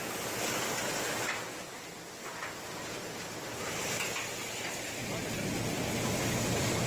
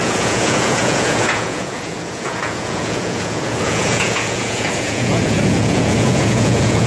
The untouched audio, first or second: first